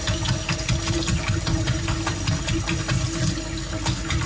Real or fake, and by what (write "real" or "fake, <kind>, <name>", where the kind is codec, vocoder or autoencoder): real